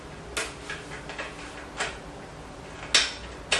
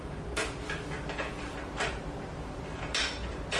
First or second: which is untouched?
first